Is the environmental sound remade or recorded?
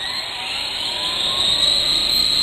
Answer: recorded